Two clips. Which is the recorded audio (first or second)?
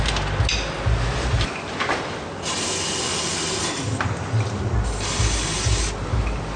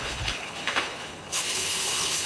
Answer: first